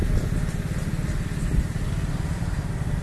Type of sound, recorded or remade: recorded